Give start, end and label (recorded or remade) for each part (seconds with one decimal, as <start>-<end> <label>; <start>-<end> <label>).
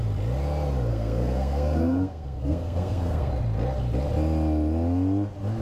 0.0-0.9 recorded; 0.9-3.3 remade; 3.3-5.6 recorded